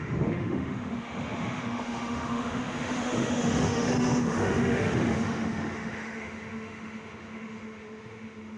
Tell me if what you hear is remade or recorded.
remade